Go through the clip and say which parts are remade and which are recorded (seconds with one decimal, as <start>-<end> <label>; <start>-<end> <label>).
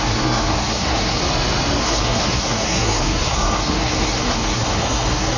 0.0-1.2 remade; 1.2-1.8 recorded; 1.8-5.4 remade